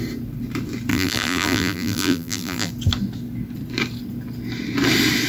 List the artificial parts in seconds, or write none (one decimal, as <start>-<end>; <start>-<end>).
0.9-2.7